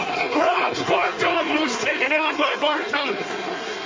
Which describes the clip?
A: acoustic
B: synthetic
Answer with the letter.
B